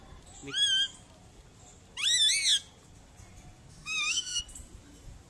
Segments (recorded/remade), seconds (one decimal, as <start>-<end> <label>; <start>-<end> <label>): 0.0-3.7 recorded; 3.7-4.4 remade; 4.4-5.3 recorded